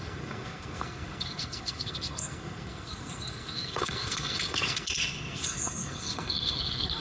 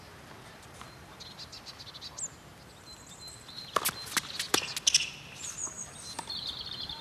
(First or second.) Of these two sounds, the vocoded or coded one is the first